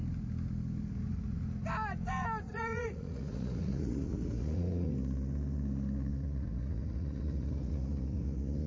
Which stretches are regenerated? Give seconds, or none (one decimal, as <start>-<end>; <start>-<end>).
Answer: 2.5-4.9; 6.1-8.7